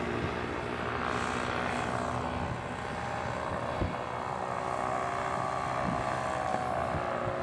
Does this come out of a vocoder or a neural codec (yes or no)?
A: no